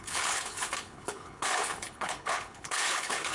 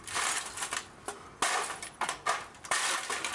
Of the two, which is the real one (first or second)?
second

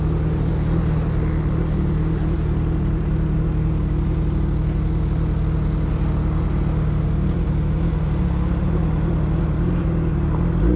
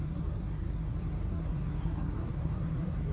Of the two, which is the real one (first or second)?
first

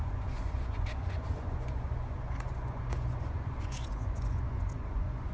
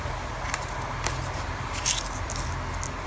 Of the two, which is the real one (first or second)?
second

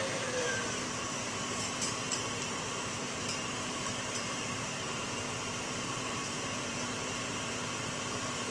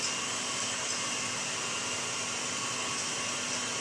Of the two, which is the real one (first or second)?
second